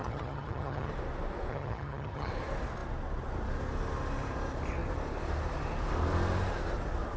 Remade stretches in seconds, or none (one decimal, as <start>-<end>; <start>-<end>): 0.0-0.9; 1.5-2.3